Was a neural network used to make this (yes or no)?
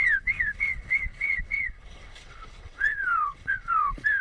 yes